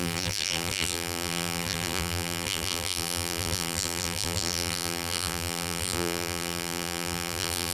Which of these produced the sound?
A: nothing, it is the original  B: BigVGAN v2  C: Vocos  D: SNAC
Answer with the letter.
B